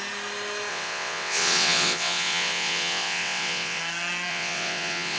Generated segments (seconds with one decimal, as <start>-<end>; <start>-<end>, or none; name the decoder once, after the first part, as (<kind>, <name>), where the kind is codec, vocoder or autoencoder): 0.7-3.8 (vocoder, WaveNeXt); 4.3-5.2